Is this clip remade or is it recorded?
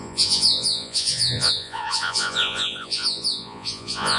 remade